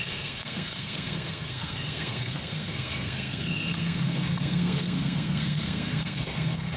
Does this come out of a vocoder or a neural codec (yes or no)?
yes